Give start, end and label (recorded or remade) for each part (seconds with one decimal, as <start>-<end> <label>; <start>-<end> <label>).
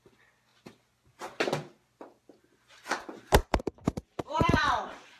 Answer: 0.0-3.4 recorded; 3.4-4.8 remade; 4.8-5.2 recorded